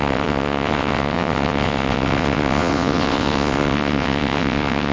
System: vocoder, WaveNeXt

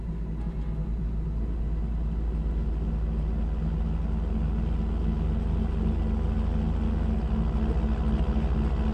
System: none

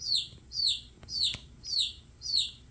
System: none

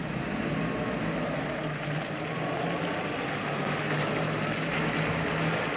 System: none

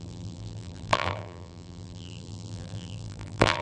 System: vocoder, BigVGAN v2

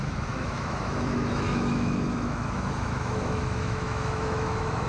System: autoencoder, DAC-VAE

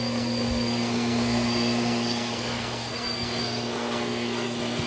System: codec, SNAC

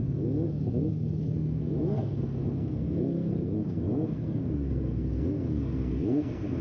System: codec, SNAC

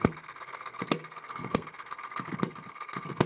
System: codec, SNAC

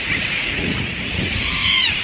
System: vocoder, Vocos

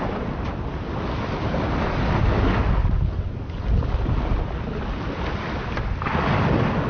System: none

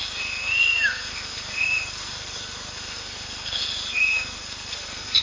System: codec, SNAC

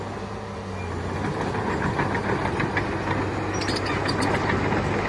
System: none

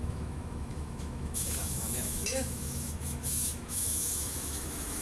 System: autoencoder, DAC-VAE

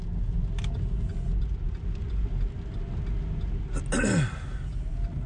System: none